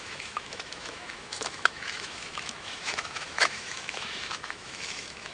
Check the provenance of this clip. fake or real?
fake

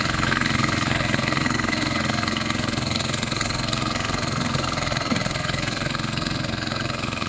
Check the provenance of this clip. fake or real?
fake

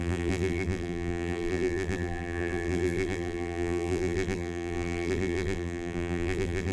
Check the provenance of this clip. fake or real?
fake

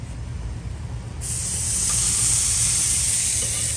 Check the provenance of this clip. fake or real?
real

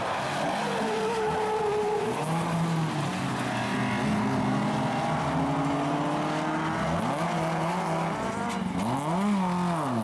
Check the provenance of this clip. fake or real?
real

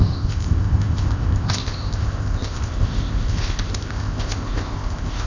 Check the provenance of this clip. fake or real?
fake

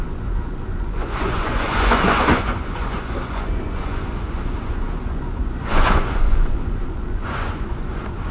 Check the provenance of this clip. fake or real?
fake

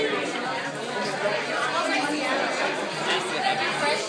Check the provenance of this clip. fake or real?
real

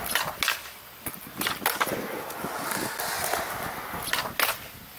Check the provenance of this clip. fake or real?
real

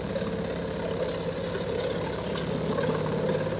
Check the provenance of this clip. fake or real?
real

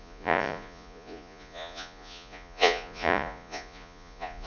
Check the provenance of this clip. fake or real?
fake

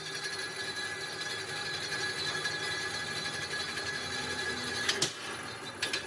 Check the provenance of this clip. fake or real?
real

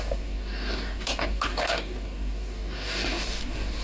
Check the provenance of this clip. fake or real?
fake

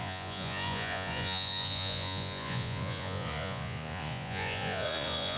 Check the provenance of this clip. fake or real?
fake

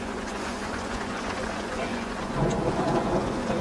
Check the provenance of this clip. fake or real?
fake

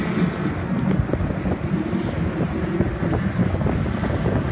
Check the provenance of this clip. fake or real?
real